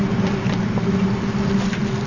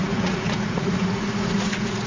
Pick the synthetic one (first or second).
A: second